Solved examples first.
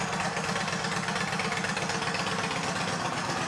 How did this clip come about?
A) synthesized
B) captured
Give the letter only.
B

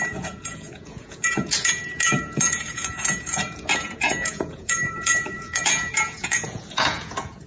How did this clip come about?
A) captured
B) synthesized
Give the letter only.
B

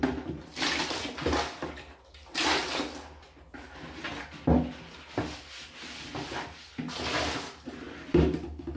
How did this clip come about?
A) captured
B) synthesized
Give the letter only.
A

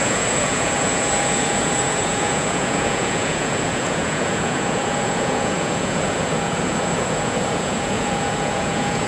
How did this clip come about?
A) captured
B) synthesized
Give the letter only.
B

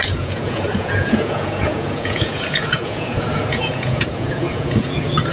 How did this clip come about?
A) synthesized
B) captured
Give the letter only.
A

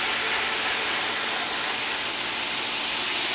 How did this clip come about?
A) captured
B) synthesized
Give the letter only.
A